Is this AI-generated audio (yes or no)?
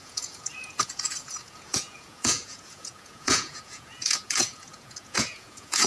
yes